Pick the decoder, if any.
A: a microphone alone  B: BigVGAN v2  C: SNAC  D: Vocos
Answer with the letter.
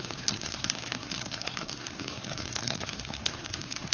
C